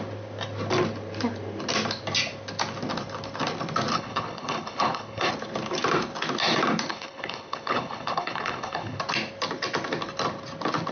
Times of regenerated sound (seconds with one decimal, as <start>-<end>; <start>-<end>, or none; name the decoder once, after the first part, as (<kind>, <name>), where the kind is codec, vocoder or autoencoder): 3.9-5.3 (codec, HILCodec); 6.9-9.0

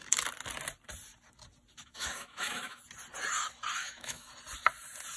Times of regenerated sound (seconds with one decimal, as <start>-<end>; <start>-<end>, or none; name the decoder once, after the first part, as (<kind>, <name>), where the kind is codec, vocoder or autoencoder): 1.8-2.8 (autoencoder, DAC-VAE); 3.8-4.3

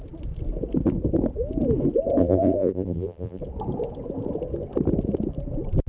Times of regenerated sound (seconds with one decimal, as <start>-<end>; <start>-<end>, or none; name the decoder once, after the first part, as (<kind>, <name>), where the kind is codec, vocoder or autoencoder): 2.2-3.4 (vocoder, BigVGAN v2)

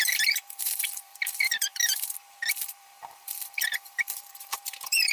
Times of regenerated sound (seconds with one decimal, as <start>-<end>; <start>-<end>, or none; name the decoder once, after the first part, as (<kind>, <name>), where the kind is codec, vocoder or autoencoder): 0.0-5.1 (vocoder, BigVGAN v2)

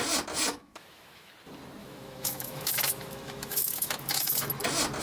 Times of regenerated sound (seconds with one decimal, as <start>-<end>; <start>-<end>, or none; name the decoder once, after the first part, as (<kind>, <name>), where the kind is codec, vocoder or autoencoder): 0.5-1.3 (autoencoder, DAC-VAE); 1.8-4.5

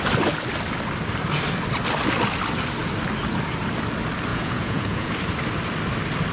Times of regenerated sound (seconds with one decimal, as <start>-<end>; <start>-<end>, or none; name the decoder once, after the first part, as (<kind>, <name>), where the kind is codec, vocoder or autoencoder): 4.3-5.1 (vocoder, Vocos)